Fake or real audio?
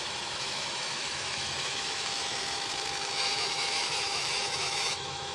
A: fake